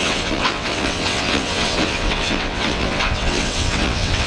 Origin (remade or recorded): remade